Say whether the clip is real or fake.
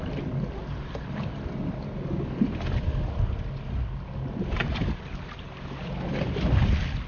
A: real